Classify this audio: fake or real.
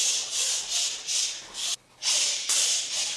real